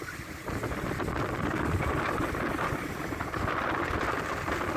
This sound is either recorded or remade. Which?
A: remade